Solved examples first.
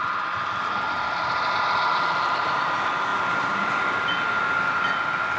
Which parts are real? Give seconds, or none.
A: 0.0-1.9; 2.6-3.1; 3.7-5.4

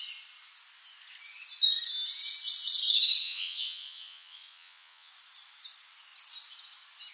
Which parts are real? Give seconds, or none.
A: 0.0-3.2; 5.1-7.1

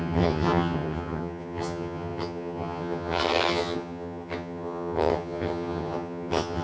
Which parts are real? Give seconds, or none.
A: none

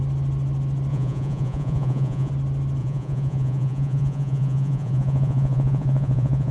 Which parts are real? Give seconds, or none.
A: 0.0-0.9; 2.3-2.8

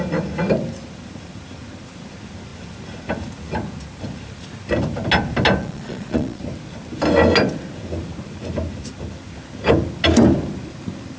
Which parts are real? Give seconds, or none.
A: 0.0-5.6; 6.4-11.2